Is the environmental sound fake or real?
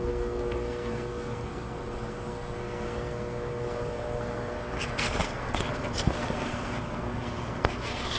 fake